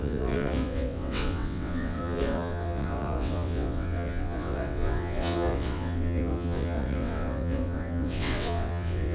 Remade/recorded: remade